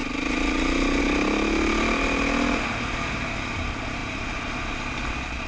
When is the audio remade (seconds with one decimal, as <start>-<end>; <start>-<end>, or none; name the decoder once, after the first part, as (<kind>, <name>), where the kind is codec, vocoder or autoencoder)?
none